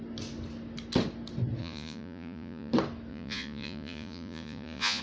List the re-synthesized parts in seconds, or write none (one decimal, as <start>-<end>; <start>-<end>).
1.6-2.7; 3.1-5.0